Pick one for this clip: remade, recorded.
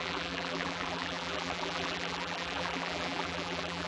remade